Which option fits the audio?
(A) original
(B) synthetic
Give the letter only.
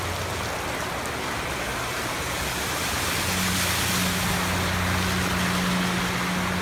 A